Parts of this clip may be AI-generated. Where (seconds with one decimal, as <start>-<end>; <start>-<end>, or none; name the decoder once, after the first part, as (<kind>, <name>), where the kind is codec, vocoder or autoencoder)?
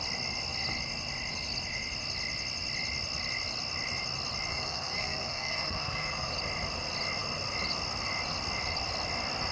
4.5-6.3 (codec, SNAC)